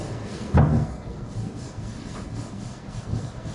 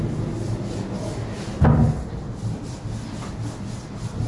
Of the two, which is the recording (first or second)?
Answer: second